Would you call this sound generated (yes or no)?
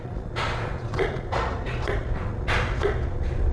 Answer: yes